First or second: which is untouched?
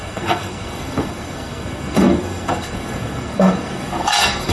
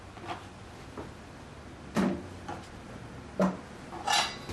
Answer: second